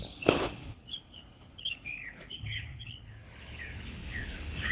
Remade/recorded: remade